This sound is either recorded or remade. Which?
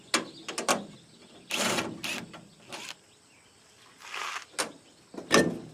recorded